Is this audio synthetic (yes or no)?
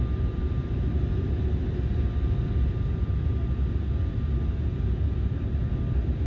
no